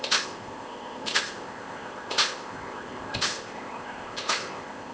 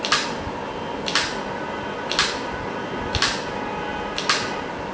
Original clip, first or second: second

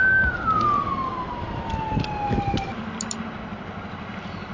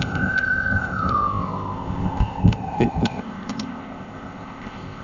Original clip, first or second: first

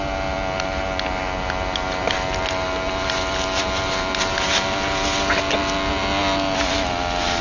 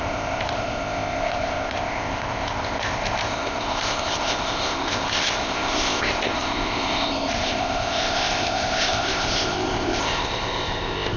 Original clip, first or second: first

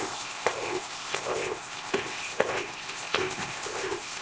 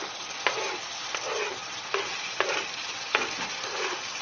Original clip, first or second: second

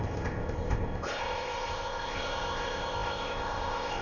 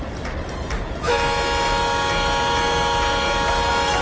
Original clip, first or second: second